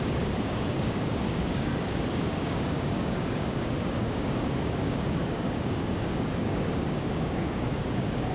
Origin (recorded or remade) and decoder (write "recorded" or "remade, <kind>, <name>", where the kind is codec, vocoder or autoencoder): remade, codec, DAC